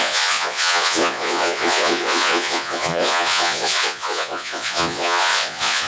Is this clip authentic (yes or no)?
no